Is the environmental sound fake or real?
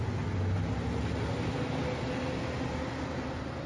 real